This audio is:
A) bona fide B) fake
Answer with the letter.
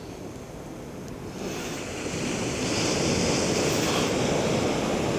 A